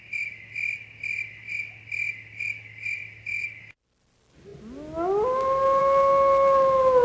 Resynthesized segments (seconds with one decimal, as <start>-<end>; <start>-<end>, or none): none